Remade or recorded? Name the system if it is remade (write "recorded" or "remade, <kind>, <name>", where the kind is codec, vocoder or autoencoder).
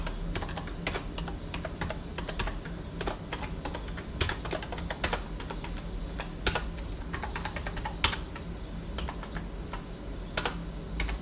recorded